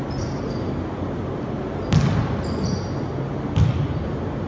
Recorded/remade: recorded